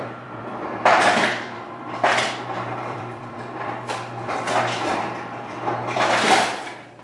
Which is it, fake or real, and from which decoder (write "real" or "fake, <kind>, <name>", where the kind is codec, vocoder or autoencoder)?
fake, vocoder, BigVGAN v2